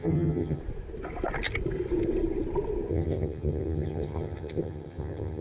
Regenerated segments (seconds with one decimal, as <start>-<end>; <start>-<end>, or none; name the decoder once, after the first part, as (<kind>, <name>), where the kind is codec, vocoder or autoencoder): 0.0-0.6 (vocoder, HiFi-GAN); 2.9-5.4